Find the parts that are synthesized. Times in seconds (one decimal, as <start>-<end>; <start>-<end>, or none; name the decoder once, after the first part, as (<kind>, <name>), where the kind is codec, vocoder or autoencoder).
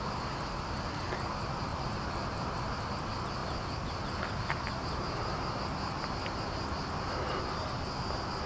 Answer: 1.7-2.5 (vocoder, BigVGAN v2)